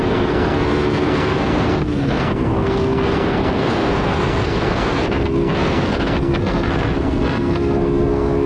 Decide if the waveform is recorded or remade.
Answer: remade